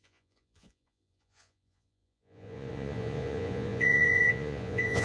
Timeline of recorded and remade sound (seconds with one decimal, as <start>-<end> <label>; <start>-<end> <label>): 0.0-5.0 remade